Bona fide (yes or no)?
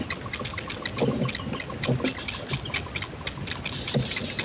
yes